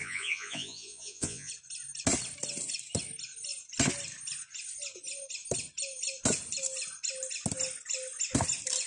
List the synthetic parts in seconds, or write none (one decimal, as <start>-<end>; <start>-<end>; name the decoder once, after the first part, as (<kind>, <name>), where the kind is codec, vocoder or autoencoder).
0.0-1.5 (vocoder, Vocos)